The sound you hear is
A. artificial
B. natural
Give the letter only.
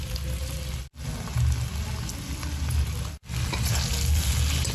B